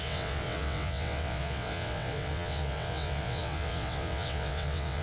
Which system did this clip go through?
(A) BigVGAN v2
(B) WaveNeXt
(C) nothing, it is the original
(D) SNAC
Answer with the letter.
B